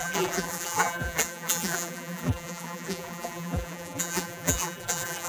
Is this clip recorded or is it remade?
remade